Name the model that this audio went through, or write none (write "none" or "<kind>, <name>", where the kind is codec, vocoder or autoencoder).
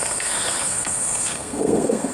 codec, SNAC